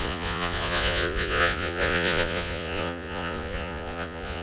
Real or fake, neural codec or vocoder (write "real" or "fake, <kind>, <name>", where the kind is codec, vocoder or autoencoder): fake, vocoder, Vocos